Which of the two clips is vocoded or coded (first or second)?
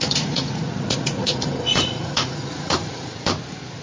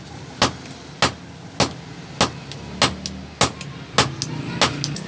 first